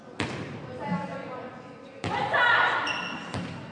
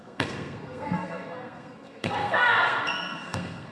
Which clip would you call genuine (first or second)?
first